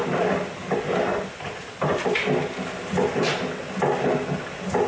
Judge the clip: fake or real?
real